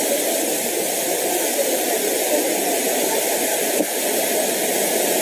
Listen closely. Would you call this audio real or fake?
real